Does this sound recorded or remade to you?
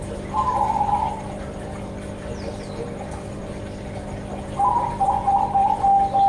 recorded